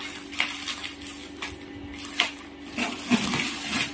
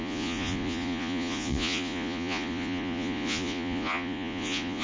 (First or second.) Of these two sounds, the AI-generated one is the second